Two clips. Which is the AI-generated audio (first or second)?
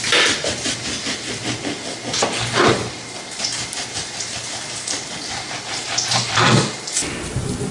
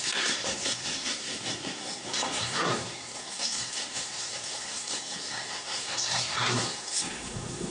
second